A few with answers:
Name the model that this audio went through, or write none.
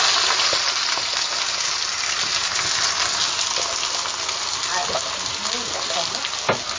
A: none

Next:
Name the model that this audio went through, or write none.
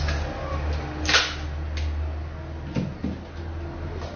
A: none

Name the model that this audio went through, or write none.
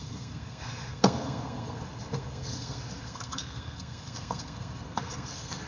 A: codec, SNAC